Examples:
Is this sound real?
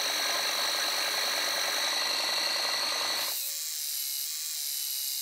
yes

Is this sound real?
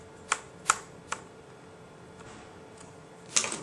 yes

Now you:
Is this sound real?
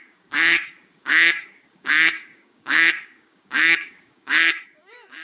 no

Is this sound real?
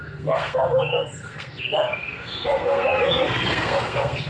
no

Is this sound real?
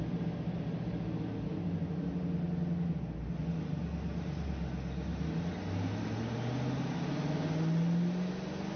yes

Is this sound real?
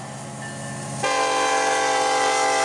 yes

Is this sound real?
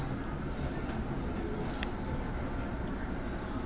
yes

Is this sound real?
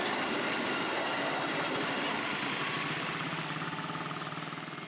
yes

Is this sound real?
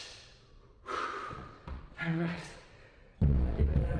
no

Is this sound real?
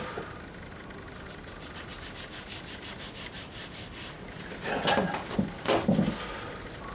yes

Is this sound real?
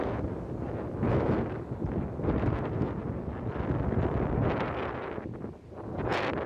yes